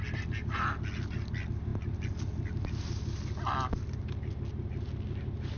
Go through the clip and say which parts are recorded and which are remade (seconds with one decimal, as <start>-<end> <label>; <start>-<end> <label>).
0.0-5.6 recorded